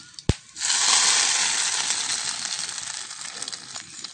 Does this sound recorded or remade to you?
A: recorded